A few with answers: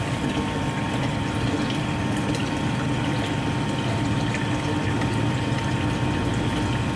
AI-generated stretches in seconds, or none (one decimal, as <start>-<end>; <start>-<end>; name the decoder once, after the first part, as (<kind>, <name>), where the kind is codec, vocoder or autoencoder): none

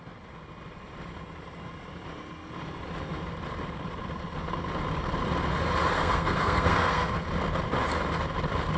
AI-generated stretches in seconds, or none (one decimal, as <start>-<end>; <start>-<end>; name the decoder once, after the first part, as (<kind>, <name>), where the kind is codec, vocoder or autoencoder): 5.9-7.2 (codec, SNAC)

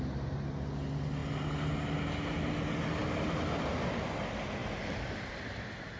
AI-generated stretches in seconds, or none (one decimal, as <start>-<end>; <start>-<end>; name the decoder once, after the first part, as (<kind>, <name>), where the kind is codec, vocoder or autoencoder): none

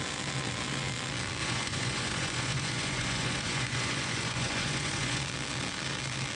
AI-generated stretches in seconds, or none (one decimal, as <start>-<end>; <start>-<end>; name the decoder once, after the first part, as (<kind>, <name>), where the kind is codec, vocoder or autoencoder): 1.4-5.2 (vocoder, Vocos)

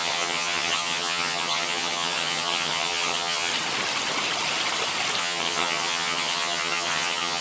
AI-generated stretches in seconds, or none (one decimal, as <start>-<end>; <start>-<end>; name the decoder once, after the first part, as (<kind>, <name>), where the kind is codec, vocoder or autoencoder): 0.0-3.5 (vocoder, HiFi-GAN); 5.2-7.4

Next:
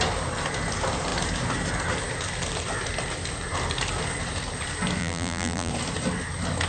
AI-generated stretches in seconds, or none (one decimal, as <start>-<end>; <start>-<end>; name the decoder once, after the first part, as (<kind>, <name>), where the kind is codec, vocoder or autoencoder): 5.0-5.7 (vocoder, BigVGAN v2)